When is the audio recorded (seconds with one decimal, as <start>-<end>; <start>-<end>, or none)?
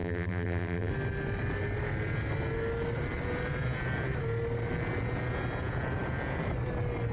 0.9-7.1